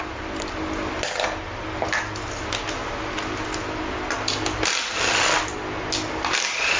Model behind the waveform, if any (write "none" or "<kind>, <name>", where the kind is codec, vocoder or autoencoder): none